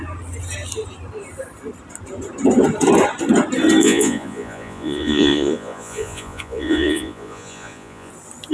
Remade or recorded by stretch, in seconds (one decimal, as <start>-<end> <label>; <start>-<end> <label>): 0.0-3.8 recorded; 3.8-8.1 remade; 8.1-8.5 recorded